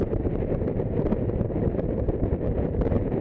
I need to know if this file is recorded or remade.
remade